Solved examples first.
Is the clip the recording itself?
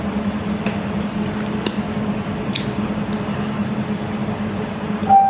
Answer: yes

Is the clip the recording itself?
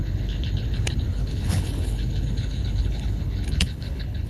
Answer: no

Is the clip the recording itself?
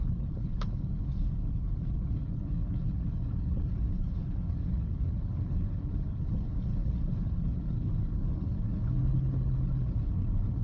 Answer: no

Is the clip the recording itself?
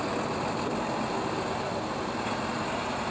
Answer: yes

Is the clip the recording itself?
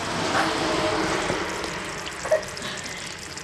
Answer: yes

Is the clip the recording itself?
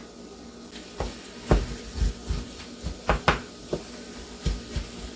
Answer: yes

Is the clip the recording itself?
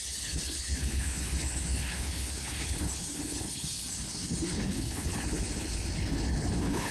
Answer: no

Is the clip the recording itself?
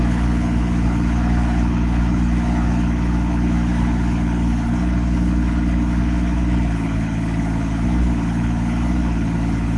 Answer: no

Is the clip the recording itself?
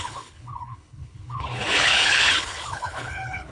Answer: no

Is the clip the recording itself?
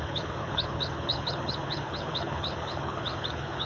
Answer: no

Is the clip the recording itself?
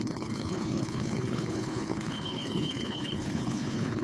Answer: no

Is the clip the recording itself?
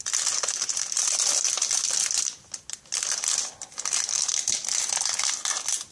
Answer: yes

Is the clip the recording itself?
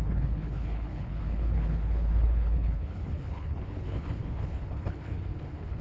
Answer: no